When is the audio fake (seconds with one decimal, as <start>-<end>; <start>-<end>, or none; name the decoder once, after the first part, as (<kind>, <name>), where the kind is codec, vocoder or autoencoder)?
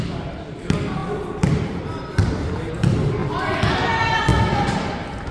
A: none